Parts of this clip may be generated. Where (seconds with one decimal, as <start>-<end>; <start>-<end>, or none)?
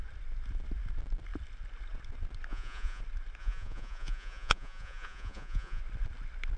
2.5-3.0; 3.4-5.8